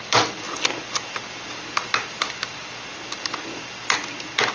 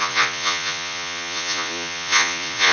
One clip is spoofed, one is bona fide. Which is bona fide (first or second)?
first